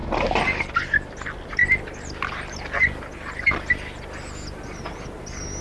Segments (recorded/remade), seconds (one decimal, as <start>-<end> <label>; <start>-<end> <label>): 0.0-5.6 recorded